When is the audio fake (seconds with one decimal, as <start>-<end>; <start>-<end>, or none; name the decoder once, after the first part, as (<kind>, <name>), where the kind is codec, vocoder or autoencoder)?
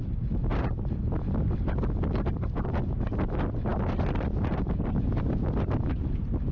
none